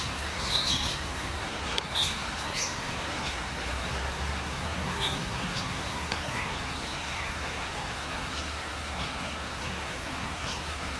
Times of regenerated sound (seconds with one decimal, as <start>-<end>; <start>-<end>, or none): 0.0-11.0